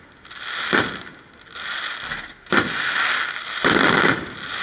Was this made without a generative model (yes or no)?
yes